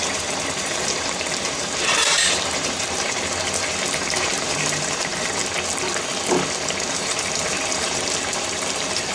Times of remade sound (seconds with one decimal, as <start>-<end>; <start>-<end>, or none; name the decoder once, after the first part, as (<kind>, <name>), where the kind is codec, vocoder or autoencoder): 0.0-5.4 (vocoder, BigVGAN v2); 6.9-9.1